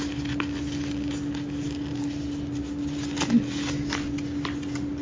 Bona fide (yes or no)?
yes